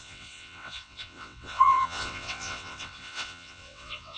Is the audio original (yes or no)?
no